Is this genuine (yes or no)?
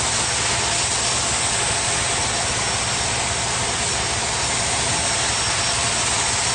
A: yes